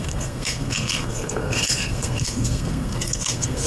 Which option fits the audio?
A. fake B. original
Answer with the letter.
A